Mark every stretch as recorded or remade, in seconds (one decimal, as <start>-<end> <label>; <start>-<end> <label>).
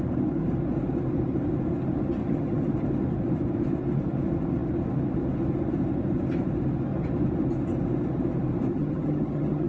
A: 0.0-2.2 recorded; 2.2-2.7 remade; 2.7-8.7 recorded; 8.7-9.7 remade